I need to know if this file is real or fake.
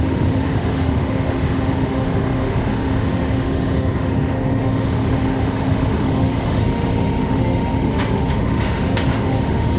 fake